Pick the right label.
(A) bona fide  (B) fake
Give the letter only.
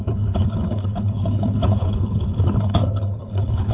B